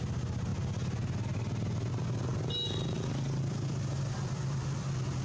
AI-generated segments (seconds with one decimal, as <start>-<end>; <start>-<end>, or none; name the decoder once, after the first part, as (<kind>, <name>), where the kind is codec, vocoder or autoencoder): none